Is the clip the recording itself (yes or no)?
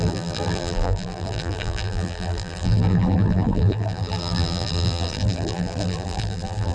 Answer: no